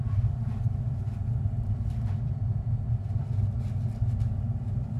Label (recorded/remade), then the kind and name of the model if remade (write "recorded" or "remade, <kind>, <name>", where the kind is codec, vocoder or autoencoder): recorded